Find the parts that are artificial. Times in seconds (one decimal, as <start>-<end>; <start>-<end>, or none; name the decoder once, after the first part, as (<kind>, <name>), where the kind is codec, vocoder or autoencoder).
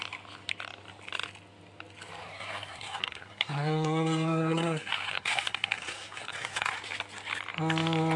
2.2-6.7 (codec, SNAC)